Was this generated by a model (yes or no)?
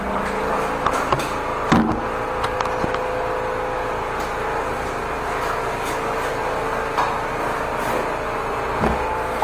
no